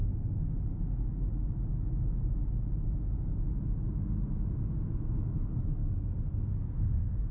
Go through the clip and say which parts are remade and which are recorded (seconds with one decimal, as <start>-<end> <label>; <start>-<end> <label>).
0.0-0.7 remade; 0.7-7.3 recorded